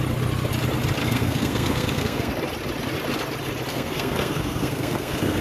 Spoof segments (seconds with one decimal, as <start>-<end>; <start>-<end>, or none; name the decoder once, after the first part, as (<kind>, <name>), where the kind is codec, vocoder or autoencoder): 1.0-2.3 (codec, SNAC); 3.7-5.4